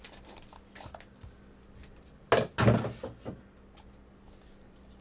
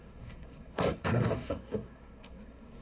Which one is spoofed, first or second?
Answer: second